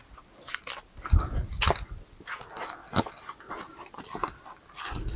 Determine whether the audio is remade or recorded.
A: recorded